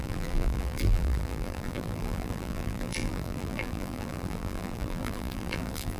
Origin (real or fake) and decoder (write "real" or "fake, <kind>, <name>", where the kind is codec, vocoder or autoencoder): fake, vocoder, BigVGAN v2